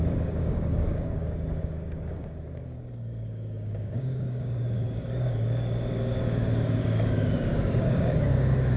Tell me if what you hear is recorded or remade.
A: remade